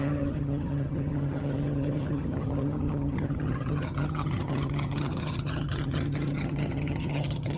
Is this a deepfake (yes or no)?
yes